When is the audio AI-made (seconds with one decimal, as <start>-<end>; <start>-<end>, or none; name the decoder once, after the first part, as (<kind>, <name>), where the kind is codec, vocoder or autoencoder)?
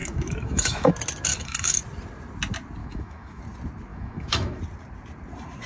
0.0-0.9 (autoencoder, DAC-VAE); 1.3-1.8; 2.8-3.4; 3.9-4.6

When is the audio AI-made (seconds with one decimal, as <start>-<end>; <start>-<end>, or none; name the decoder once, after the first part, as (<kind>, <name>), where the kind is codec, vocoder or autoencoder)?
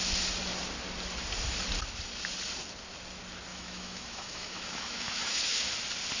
3.5-5.7 (autoencoder, DAC-VAE)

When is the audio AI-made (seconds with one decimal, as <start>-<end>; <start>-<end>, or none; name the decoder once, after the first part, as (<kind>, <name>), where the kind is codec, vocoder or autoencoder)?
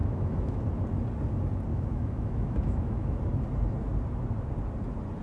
0.0-0.6 (autoencoder, DAC-VAE); 1.7-3.2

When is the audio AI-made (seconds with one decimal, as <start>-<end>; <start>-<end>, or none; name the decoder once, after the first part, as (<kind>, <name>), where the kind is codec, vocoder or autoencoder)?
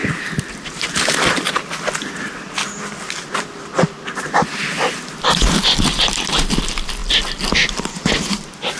none